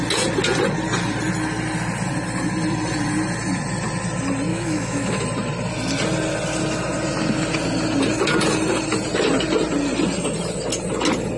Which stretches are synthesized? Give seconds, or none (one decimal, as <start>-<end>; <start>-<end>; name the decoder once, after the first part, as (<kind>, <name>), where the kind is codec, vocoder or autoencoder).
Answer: 4.5-5.2 (autoencoder, DAC-VAE)